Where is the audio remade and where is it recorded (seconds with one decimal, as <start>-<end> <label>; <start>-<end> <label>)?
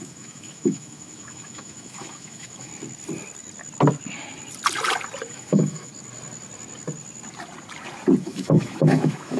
0.0-2.7 remade; 2.7-5.3 recorded; 5.3-5.9 remade; 5.9-8.2 recorded; 8.2-9.4 remade